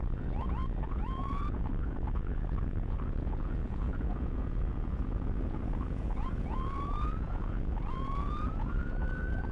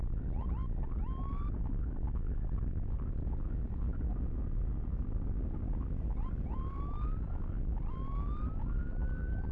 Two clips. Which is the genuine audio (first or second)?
second